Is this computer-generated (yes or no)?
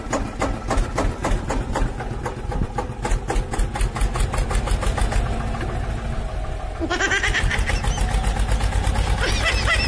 no